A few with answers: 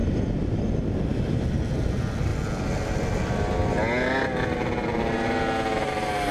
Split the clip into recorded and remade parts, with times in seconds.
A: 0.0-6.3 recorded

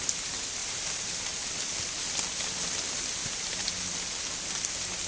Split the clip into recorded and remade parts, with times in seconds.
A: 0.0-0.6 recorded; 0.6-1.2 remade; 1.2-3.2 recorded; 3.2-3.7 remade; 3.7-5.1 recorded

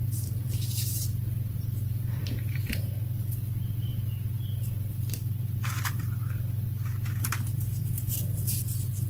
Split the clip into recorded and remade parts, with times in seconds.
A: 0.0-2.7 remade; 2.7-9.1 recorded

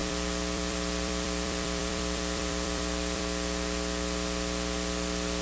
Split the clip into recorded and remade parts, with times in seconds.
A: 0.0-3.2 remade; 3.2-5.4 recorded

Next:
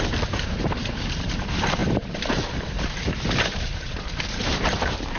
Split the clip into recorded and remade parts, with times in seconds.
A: 0.0-5.2 remade

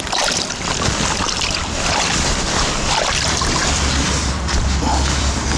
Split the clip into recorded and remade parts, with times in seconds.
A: 0.0-3.6 remade; 3.6-4.6 recorded; 4.6-5.6 remade

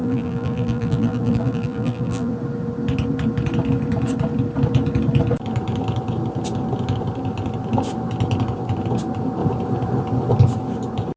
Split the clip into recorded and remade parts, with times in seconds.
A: 0.0-2.3 remade; 2.3-11.2 recorded

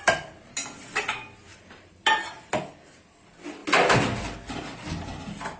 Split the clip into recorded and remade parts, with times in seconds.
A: 0.0-1.5 recorded; 1.5-2.6 remade; 2.6-5.6 recorded